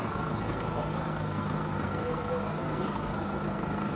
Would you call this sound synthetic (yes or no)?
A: yes